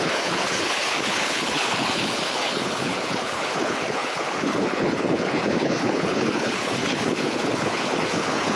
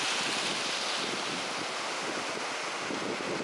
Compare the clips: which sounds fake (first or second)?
first